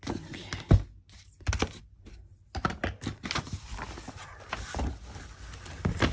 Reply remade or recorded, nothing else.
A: recorded